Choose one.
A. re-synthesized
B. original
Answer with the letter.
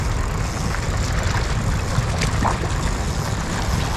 B